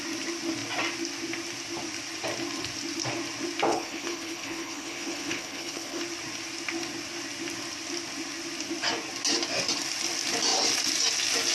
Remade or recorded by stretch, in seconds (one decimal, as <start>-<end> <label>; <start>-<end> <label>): 0.0-3.7 recorded; 3.7-6.0 remade; 6.0-11.5 recorded